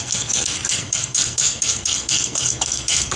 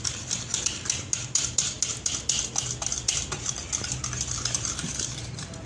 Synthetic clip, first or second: first